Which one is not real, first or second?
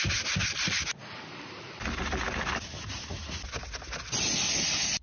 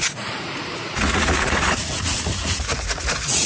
second